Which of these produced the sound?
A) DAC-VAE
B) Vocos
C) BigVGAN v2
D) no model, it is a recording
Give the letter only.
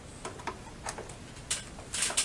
D